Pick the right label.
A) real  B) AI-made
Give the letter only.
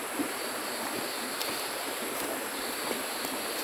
B